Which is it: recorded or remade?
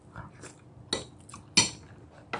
recorded